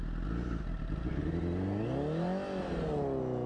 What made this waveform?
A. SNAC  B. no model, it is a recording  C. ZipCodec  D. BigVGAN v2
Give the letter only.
B